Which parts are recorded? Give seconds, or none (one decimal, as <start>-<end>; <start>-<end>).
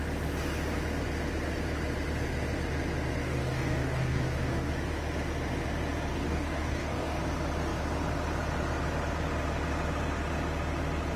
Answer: 0.0-3.2; 4.7-6.1; 7.2-11.2